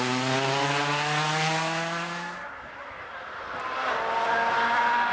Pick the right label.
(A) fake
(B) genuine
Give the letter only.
B